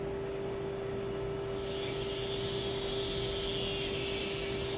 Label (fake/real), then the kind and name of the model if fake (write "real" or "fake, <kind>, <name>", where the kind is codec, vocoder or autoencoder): real